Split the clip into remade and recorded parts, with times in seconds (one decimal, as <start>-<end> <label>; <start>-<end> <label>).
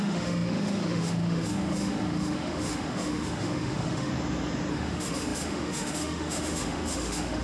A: 0.0-4.1 remade; 4.1-4.7 recorded; 4.7-7.4 remade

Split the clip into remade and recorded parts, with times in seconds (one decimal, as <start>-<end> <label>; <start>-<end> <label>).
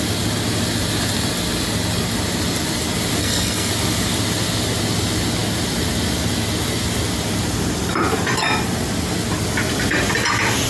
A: 0.0-3.2 recorded; 3.2-3.7 remade; 3.7-10.7 recorded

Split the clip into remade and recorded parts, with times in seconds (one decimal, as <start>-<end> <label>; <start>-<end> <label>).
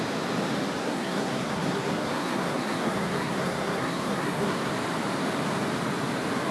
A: 0.0-0.8 recorded; 0.8-4.7 remade; 4.7-6.5 recorded